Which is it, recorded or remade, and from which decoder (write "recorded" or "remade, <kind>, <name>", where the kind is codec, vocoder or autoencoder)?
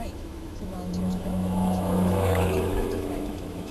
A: remade, autoencoder, DAC-VAE